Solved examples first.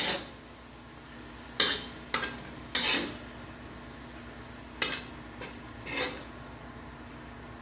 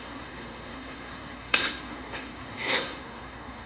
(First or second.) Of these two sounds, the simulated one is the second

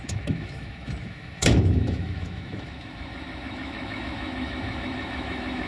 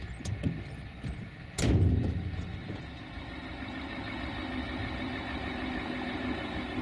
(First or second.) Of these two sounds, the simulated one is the first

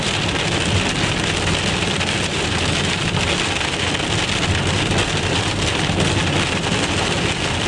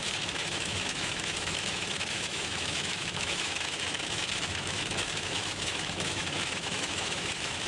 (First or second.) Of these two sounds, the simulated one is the second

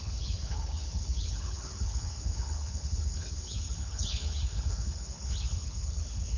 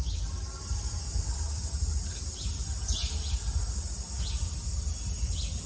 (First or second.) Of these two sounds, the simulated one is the first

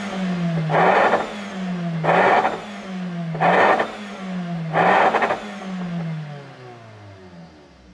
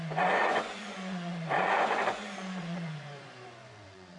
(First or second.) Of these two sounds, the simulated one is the second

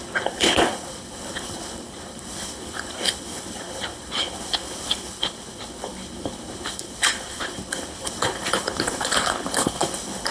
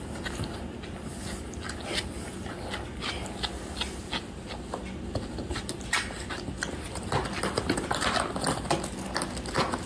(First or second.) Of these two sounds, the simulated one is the first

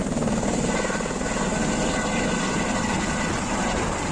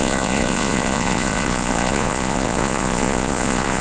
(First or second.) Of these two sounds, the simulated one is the second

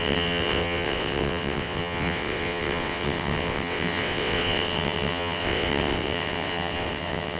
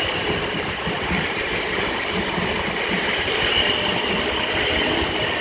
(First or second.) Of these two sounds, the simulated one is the first